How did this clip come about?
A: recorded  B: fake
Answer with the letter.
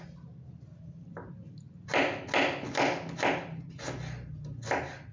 A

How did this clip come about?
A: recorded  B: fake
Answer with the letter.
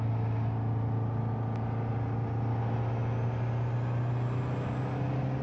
A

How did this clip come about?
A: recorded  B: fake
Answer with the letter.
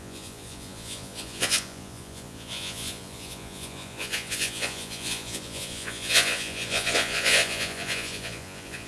B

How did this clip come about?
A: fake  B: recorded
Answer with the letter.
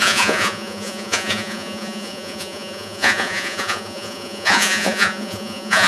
A